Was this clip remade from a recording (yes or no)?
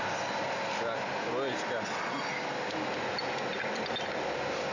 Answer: no